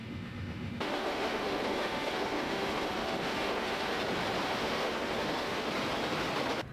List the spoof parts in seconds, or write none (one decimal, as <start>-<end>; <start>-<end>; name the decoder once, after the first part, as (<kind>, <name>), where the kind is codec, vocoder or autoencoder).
0.0-4.0 (autoencoder, DAC-VAE); 4.4-5.7